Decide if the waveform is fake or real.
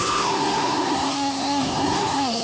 fake